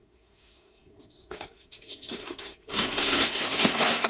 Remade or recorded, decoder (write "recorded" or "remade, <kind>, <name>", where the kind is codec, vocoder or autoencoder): remade, codec, SNAC